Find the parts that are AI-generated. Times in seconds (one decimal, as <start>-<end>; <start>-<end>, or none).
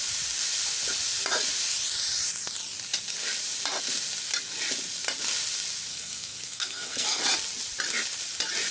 5.9-7.2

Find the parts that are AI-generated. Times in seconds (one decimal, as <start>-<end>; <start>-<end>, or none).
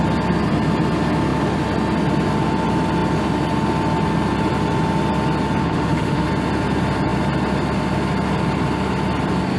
5.6-6.3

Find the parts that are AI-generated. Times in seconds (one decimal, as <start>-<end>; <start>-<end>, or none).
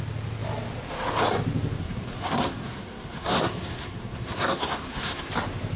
1.8-5.3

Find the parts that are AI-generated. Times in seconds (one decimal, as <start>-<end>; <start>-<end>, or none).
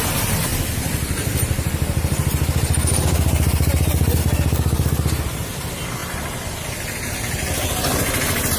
none